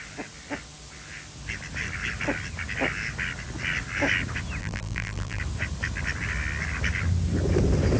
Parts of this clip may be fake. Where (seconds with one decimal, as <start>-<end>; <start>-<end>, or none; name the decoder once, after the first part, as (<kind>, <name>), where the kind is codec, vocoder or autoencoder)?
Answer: 4.6-5.4 (vocoder, BigVGAN v2)